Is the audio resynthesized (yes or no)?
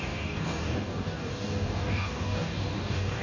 yes